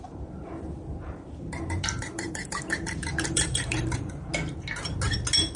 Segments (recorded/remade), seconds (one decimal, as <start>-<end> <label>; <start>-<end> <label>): 0.0-4.3 remade; 4.3-5.6 recorded

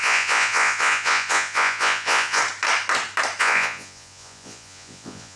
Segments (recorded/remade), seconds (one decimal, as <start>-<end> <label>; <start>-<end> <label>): 0.0-2.4 remade; 2.4-3.4 recorded; 3.4-5.4 remade

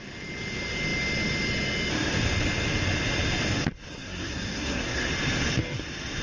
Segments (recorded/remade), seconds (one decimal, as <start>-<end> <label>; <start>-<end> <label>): 0.0-3.9 recorded; 3.9-5.1 remade; 5.1-6.2 recorded

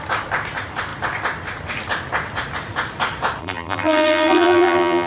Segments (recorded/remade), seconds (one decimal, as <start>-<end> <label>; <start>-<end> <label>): 0.0-3.4 recorded; 3.4-5.1 remade

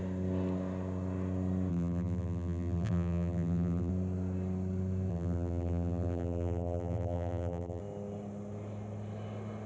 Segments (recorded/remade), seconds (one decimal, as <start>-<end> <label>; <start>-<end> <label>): 0.0-1.7 recorded; 1.7-3.9 remade; 3.9-5.1 recorded; 5.1-7.8 remade; 7.8-9.7 recorded